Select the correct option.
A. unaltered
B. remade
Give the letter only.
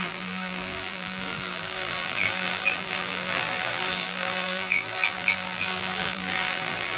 B